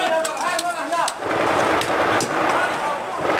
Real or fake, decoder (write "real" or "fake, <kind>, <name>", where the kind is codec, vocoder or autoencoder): real